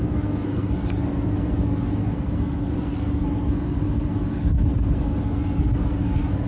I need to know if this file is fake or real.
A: fake